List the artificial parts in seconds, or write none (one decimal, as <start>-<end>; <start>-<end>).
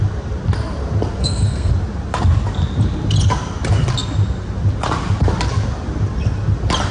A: 1.2-1.7